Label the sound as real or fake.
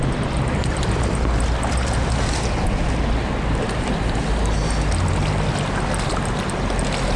real